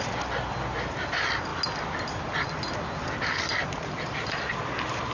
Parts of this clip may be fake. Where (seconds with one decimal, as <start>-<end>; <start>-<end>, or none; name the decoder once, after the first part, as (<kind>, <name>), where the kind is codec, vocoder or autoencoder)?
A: none